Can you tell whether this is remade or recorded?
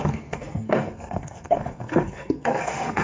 remade